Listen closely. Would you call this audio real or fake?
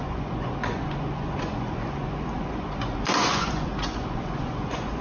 fake